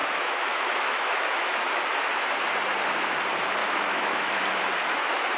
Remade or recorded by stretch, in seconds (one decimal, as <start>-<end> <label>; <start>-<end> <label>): 0.0-1.5 remade; 1.5-3.6 recorded; 3.6-4.3 remade; 4.3-5.4 recorded